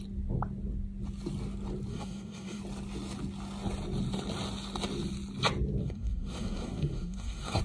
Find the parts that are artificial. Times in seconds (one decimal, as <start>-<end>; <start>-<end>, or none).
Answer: 1.9-2.6; 5.8-7.6